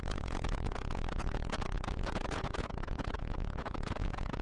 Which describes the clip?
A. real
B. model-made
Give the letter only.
B